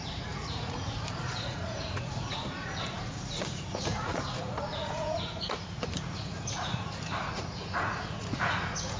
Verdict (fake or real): fake